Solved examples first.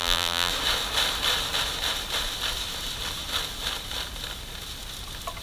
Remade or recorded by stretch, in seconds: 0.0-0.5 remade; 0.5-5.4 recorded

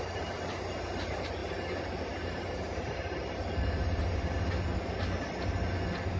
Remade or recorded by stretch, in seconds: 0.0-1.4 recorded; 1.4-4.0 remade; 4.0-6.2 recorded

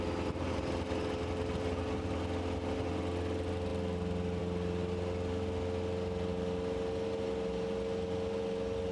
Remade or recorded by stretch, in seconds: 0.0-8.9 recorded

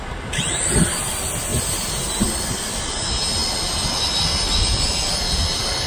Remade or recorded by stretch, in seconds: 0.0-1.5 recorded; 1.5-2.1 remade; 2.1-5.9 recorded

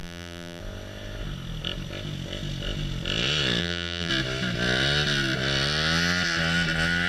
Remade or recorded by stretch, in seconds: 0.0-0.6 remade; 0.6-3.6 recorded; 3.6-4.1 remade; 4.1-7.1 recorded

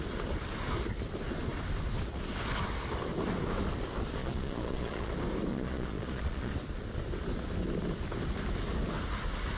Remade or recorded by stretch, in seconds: 0.0-4.2 recorded; 4.2-5.1 remade; 5.1-5.5 recorded; 5.5-6.5 remade; 6.5-9.6 recorded